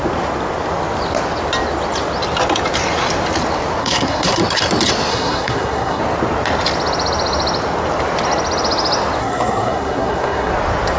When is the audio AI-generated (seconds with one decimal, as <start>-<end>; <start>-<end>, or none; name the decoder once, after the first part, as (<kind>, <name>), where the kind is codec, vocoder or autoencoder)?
3.8-4.4 (codec, SNAC); 5.1-6.0; 9.2-10.5